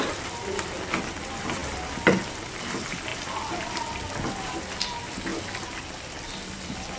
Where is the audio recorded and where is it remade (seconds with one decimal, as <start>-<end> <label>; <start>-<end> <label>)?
0.0-7.0 recorded